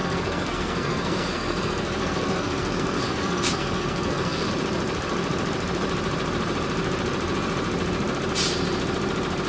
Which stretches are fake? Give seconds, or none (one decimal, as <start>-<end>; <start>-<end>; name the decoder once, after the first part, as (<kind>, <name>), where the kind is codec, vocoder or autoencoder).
0.0-4.5 (codec, SNAC)